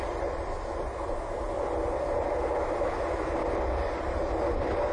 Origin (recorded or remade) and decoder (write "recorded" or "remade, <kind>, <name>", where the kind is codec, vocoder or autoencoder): recorded